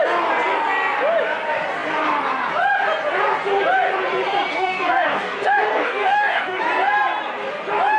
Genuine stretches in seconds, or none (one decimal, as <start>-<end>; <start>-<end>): 0.0-4.5; 6.6-8.0